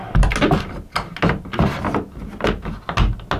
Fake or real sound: real